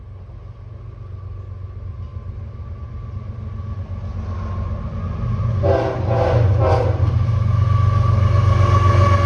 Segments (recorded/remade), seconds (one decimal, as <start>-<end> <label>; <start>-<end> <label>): 0.0-9.3 recorded